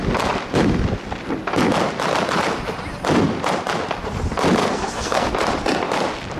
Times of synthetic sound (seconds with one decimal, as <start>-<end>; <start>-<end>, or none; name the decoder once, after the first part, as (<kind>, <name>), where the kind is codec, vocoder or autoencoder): 4.6-5.3 (codec, SNAC)